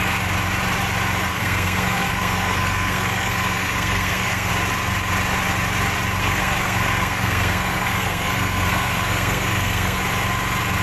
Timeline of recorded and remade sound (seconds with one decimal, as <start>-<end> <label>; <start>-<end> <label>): 0.0-1.3 recorded; 1.3-4.5 remade; 4.5-6.2 recorded; 6.2-10.0 remade; 10.0-10.8 recorded